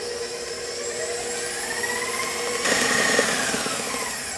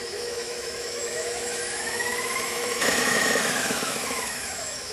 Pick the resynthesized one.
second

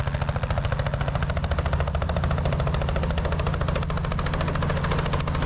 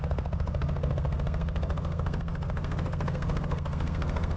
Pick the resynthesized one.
second